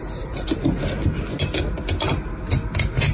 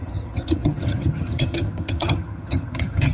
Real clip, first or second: first